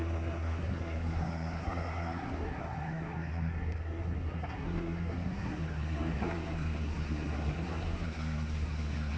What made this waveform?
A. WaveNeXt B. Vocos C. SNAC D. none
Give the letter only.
C